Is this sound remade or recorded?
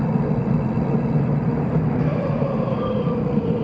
recorded